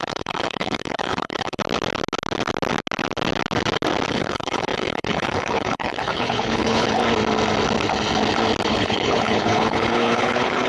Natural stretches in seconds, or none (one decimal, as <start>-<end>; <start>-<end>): 1.6-4.1; 7.0-8.7